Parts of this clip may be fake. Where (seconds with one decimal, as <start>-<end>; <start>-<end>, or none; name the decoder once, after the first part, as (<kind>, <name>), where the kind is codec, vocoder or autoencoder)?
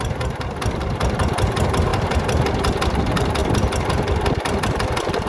none